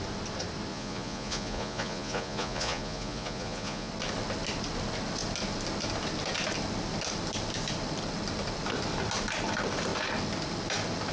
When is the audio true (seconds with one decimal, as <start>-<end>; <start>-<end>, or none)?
0.0-0.7; 3.9-11.1

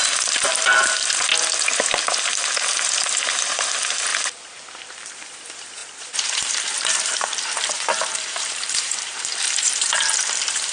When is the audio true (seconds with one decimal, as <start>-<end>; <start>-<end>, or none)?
1.3-2.2; 4.1-5.1